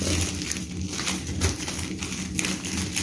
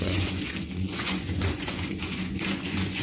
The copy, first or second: second